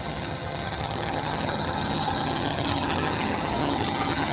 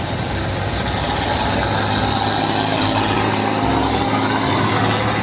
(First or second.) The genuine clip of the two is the second